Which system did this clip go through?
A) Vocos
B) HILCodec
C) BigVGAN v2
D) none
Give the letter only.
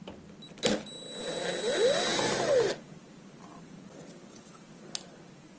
D